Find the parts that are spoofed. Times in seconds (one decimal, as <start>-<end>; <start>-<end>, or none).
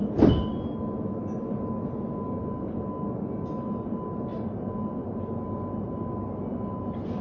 none